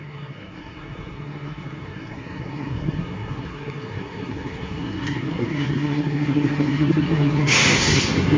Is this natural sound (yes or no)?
no